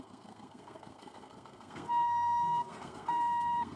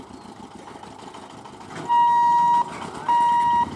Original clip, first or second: second